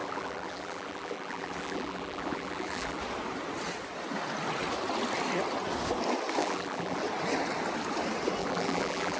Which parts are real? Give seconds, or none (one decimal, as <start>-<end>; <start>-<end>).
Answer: 3.0-6.4; 7.0-8.4